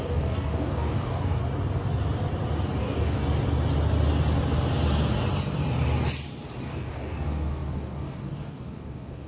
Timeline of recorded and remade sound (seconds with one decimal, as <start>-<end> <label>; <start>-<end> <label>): 0.0-1.4 remade; 1.4-2.8 recorded; 2.8-3.2 remade; 3.2-6.6 recorded; 6.6-9.3 remade